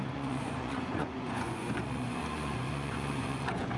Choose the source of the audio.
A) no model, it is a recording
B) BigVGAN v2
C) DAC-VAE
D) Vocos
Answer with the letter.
D